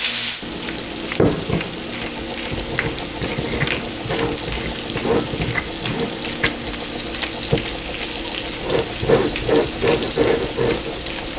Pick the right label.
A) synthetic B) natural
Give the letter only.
B